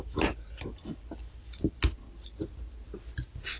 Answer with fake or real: real